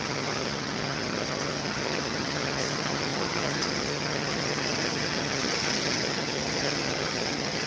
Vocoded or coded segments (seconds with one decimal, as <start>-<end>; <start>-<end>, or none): 0.0-7.7